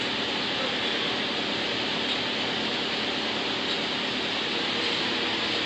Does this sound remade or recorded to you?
recorded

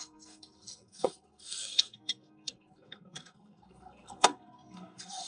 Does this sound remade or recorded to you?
remade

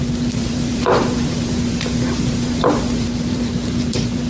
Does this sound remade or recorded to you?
remade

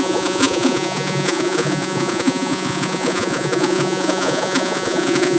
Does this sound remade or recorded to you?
remade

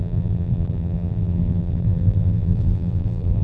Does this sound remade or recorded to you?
remade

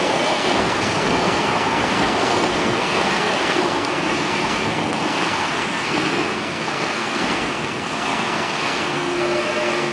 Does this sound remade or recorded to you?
remade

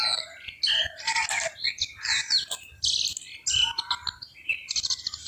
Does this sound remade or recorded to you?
recorded